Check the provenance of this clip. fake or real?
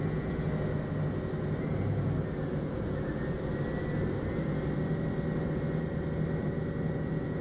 real